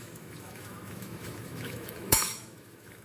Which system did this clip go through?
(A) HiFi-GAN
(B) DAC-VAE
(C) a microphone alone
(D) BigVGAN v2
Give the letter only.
B